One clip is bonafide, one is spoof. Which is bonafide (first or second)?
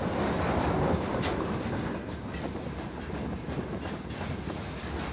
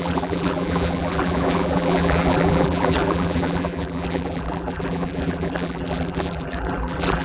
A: first